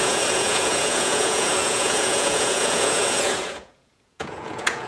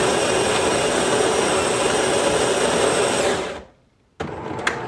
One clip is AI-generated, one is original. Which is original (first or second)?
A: second